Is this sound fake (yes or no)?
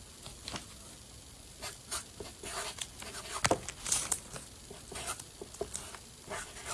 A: no